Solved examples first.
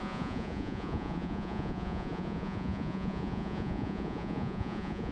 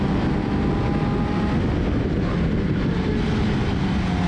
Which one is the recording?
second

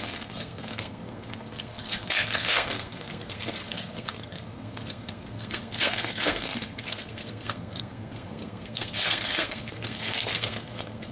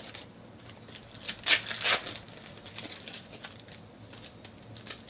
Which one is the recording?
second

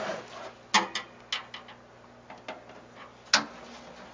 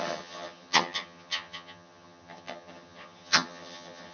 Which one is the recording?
first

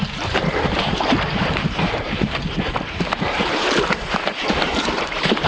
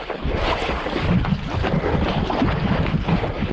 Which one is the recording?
second